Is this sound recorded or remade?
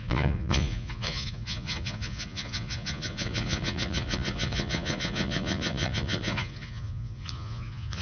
remade